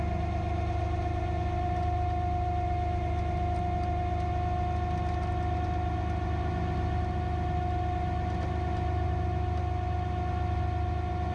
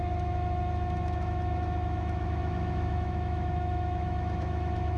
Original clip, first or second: first